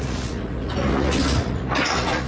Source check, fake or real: fake